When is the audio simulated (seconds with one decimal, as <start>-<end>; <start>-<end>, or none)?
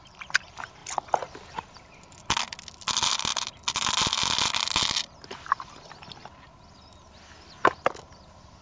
none